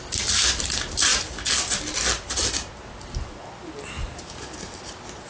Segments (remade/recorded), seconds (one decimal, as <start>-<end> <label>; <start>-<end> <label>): 0.0-5.3 recorded